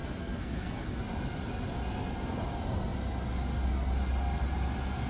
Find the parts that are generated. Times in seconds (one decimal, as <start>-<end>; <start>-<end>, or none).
0.0-1.0